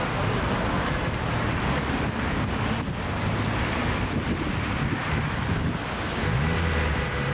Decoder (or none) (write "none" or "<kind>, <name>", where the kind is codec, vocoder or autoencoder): none